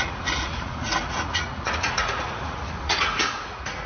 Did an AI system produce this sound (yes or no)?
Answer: yes